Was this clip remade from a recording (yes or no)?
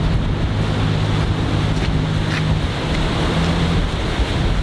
no